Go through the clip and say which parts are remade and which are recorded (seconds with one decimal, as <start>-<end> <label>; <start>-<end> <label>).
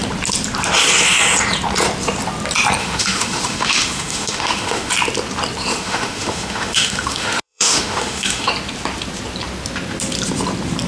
0.0-2.8 recorded; 2.8-4.9 remade; 4.9-5.7 recorded; 5.7-8.5 remade; 8.5-10.9 recorded